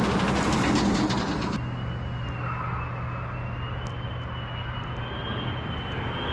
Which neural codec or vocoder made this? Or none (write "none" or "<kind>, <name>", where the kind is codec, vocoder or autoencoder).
none